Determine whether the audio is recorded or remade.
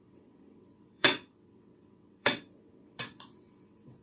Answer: remade